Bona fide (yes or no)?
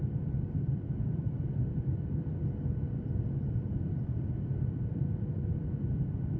no